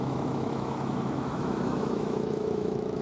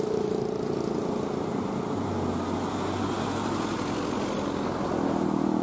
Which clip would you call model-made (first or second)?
first